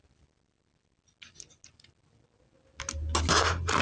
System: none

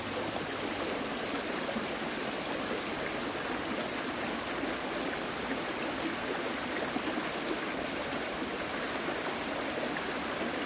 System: none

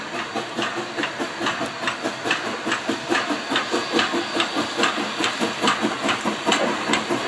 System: none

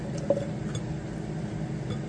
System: none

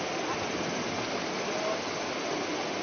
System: none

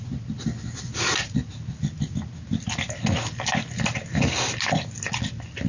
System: none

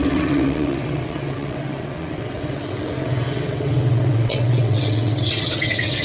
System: vocoder, WaveNeXt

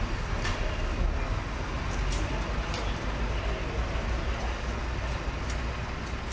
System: none